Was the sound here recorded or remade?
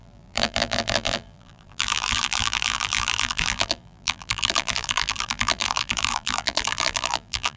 remade